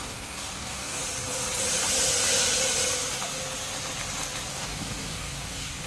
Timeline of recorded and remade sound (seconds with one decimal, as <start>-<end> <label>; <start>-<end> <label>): 0.0-1.0 remade; 1.0-4.5 recorded; 4.5-5.9 remade